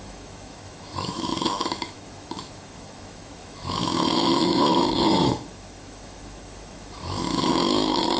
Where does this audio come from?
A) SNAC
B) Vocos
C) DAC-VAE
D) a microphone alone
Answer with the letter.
C